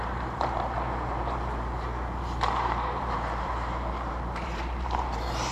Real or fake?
fake